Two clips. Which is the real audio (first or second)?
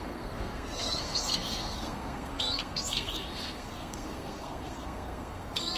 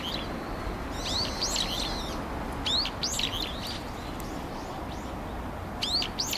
second